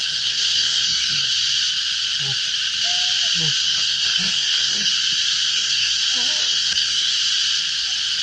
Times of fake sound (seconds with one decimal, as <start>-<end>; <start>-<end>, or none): 0.0-1.3; 3.6-4.9; 5.5-6.0; 6.4-7.1